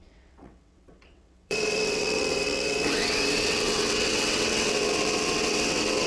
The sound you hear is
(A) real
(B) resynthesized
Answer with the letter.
B